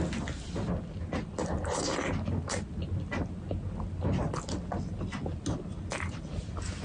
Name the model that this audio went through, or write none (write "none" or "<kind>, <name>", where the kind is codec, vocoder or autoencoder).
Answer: none